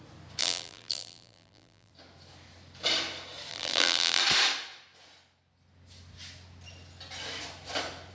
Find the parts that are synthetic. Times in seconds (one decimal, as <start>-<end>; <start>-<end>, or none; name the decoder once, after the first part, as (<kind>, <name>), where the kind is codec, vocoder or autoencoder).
0.4-1.9 (vocoder, BigVGAN v2); 3.5-4.2